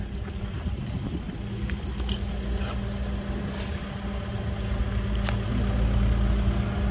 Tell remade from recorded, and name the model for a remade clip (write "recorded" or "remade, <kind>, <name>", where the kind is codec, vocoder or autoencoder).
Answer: recorded